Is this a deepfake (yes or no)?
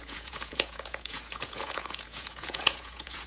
yes